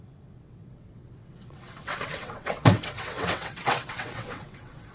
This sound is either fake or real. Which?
fake